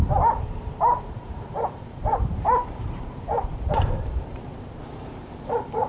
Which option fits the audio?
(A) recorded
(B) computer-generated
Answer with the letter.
B